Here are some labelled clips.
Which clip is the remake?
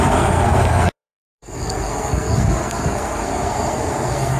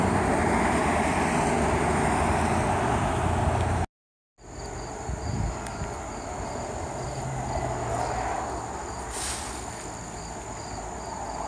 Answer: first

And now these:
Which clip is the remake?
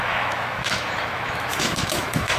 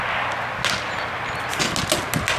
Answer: first